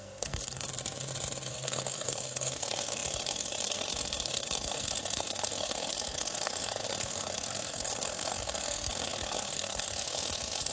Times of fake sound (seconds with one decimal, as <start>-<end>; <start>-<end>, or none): 0.0-0.7; 1.5-10.7